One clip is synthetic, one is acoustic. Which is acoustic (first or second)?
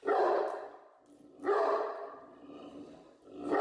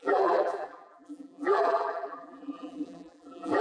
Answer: first